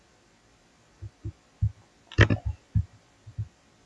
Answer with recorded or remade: recorded